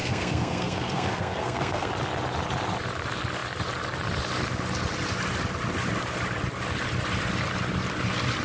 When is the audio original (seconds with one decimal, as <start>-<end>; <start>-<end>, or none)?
1.9-8.4